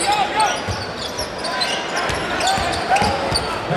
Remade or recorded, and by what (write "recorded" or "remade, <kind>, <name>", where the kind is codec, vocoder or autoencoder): recorded